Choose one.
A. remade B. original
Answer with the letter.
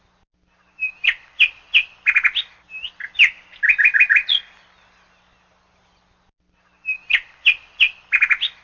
B